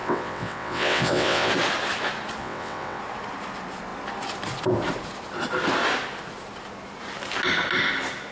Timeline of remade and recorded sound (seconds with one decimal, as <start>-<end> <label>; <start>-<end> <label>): 0.0-1.5 remade; 1.5-2.4 recorded; 2.4-3.0 remade; 3.0-8.3 recorded